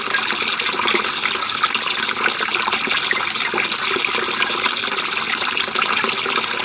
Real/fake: real